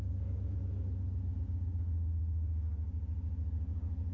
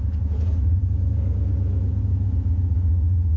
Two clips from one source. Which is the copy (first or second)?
second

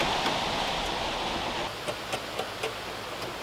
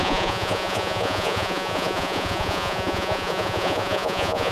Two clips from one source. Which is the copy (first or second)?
second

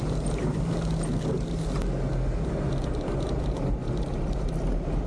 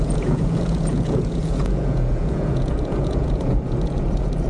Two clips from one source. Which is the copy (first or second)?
second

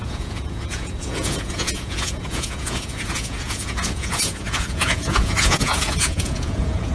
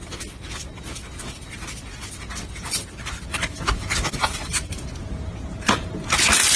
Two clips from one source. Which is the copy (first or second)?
first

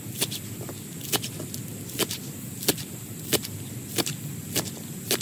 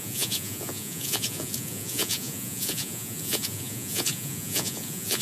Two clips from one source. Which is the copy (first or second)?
second